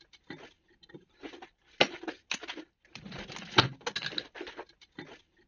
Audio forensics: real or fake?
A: real